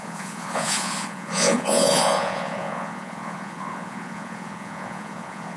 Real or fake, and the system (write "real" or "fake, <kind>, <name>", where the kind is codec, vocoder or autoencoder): fake, vocoder, Vocos